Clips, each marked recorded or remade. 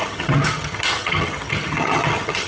remade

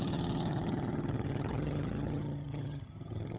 remade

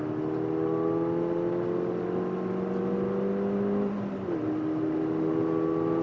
recorded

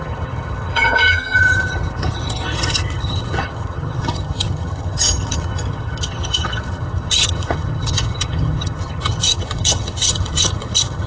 remade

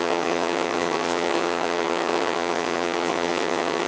remade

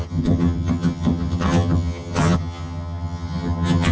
remade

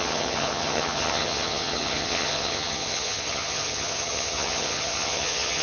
remade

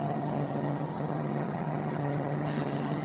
remade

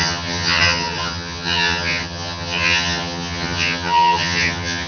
remade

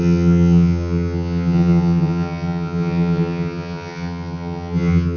remade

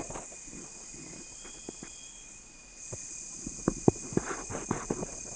recorded